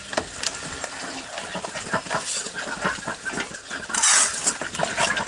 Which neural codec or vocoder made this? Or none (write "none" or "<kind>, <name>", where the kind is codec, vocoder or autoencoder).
none